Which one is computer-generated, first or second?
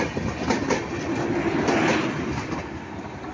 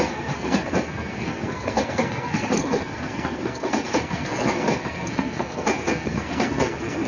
second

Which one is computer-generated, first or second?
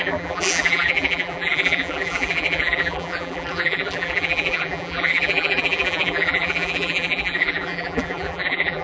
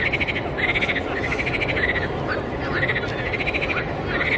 first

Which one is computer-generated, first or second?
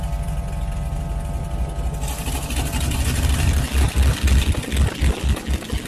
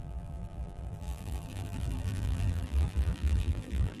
second